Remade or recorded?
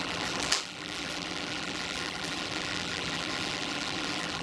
remade